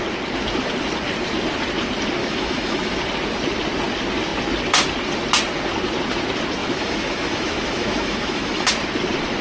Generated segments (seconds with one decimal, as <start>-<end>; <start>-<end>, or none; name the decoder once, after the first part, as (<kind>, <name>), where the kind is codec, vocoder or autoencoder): 2.2-3.0 (autoencoder, DAC-VAE); 6.6-8.7